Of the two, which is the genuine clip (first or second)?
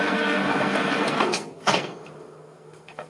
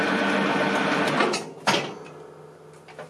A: second